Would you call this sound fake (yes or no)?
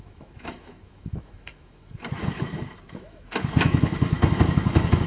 yes